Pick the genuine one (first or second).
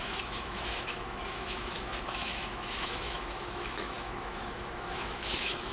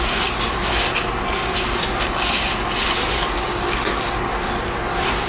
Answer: second